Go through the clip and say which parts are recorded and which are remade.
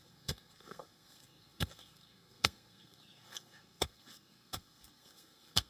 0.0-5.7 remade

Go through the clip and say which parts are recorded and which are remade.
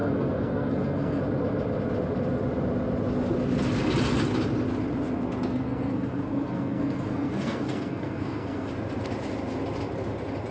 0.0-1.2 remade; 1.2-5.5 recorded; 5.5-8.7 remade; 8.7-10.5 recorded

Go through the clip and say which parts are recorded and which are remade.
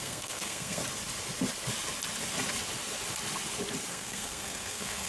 0.0-0.8 remade; 0.8-3.9 recorded; 3.9-5.1 remade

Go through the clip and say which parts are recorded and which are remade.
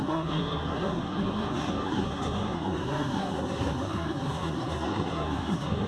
0.0-5.9 remade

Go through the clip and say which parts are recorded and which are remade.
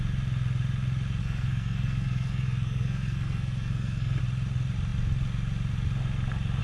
0.0-1.2 recorded; 1.2-4.2 remade; 4.2-6.6 recorded